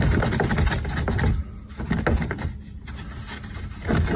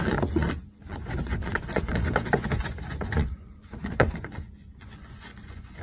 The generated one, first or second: second